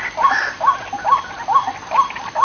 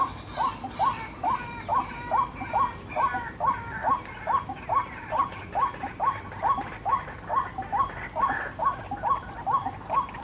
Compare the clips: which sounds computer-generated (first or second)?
first